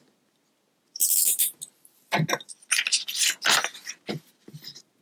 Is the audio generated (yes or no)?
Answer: no